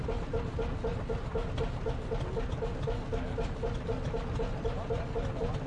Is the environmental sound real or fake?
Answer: real